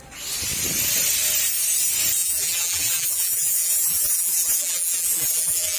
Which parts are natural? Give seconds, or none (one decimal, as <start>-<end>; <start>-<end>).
0.0-2.2